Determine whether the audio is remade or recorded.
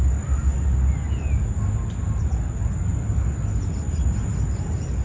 recorded